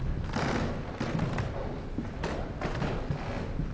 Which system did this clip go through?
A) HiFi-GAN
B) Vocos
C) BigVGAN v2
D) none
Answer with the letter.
D